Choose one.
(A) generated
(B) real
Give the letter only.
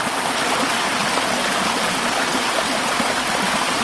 B